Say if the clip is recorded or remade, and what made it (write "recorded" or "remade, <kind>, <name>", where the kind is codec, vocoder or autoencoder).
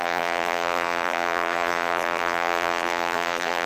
remade, vocoder, BigVGAN v2